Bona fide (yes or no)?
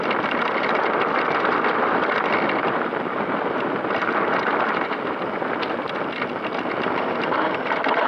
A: yes